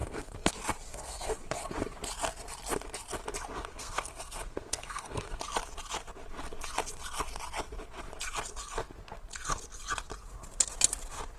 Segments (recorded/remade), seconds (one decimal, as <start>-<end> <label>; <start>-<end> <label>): 0.0-0.5 remade; 0.5-0.9 recorded; 0.9-1.4 remade; 1.4-3.7 recorded; 3.7-5.4 remade; 5.4-11.4 recorded